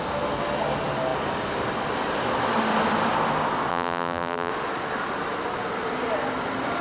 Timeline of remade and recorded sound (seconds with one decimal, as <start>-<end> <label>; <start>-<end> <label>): 0.0-3.7 recorded; 3.7-4.5 remade; 4.5-6.8 recorded